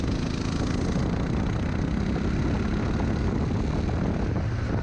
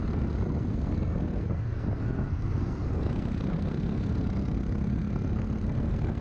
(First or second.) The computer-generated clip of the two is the second